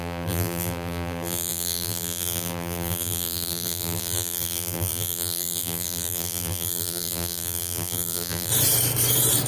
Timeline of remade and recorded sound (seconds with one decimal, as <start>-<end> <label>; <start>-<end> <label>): 0.0-8.5 remade; 8.5-9.5 recorded